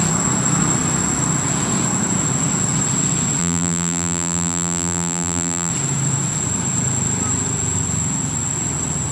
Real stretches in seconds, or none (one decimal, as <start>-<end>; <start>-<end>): 0.0-3.4; 5.7-9.1